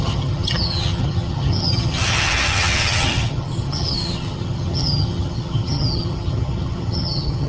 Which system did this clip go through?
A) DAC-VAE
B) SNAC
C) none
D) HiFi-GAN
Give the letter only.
D